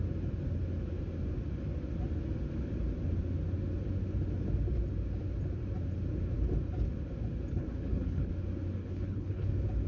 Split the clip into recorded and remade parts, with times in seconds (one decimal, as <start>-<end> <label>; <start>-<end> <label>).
0.0-7.5 recorded; 7.5-8.3 remade; 8.3-8.8 recorded; 8.8-9.5 remade; 9.5-9.9 recorded